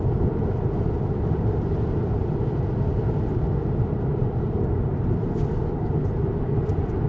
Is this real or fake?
real